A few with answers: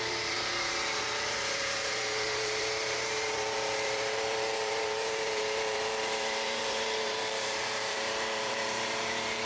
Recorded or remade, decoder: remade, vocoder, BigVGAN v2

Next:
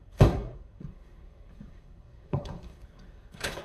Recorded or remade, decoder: remade, codec, SNAC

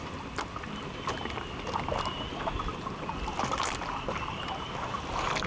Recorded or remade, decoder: recorded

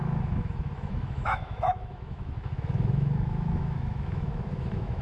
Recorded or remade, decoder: remade, autoencoder, DAC-VAE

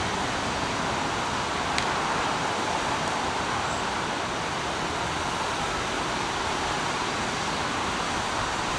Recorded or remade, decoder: recorded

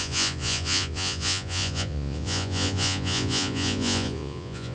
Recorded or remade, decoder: remade, vocoder, Vocos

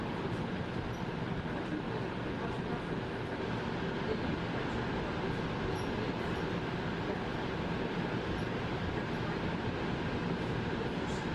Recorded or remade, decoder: recorded